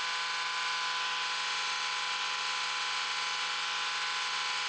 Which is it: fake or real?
real